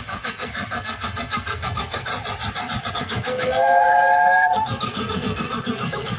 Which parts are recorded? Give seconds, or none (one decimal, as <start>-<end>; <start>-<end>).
2.1-2.9